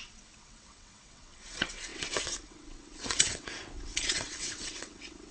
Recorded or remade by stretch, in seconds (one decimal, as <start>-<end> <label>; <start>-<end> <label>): 0.0-5.3 remade